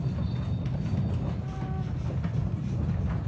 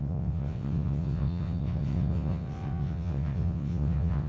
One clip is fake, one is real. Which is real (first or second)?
first